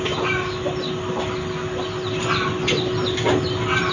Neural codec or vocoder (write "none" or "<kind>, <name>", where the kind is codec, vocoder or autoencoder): none